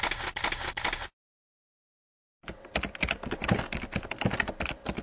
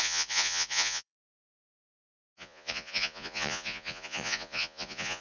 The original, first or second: first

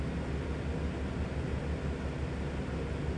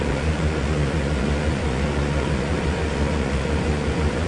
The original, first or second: first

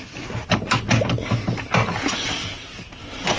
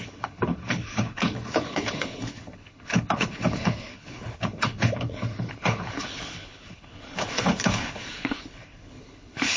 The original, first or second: first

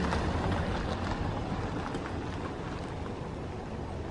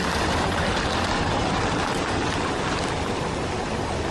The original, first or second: first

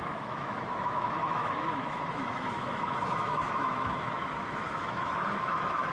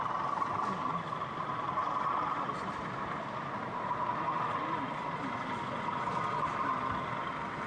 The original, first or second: second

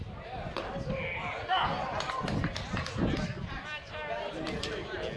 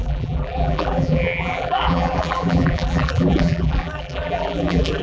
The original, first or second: first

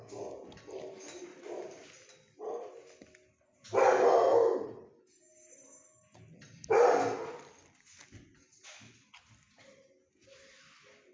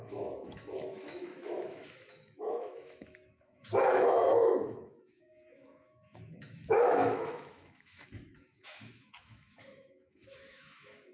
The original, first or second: first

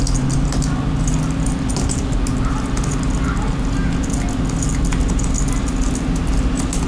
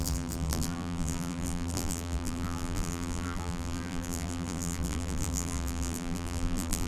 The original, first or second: first